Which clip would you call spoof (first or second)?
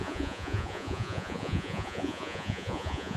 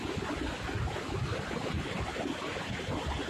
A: first